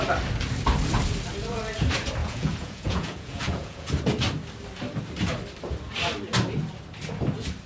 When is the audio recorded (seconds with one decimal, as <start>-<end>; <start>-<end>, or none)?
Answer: 0.0-2.2; 3.9-7.7